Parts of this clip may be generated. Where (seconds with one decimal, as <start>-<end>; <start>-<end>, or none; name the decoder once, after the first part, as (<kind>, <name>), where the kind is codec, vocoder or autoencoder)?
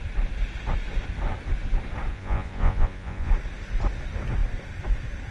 2.1-3.3 (vocoder, Vocos)